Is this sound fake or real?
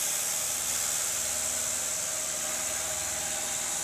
real